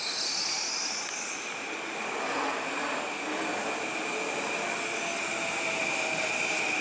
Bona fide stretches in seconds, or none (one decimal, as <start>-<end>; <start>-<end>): 0.0-6.8